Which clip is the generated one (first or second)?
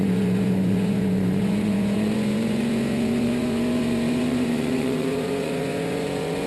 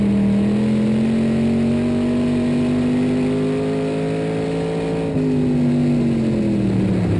first